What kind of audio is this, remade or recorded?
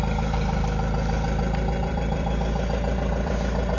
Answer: remade